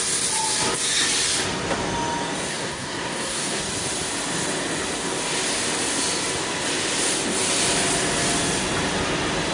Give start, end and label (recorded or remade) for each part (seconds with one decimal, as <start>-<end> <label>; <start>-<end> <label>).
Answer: 0.0-2.5 recorded; 2.5-3.6 remade; 3.6-9.5 recorded